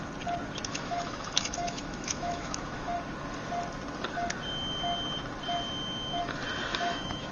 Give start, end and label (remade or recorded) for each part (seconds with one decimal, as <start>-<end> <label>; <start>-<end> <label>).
0.0-0.7 recorded; 0.7-3.0 remade; 3.0-6.7 recorded; 6.7-7.3 remade